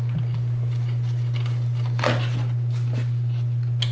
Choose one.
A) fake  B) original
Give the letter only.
B